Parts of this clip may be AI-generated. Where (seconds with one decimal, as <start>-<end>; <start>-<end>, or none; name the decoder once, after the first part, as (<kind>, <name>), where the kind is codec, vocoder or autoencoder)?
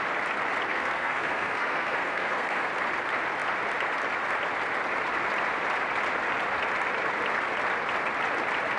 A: 0.7-2.7 (codec, SNAC)